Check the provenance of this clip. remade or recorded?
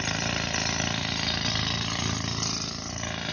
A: recorded